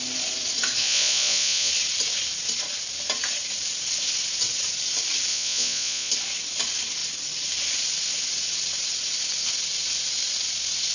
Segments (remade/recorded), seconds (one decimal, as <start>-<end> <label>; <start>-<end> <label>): 0.0-0.8 recorded; 0.8-1.7 remade; 1.7-5.3 recorded; 5.3-6.1 remade; 6.1-10.9 recorded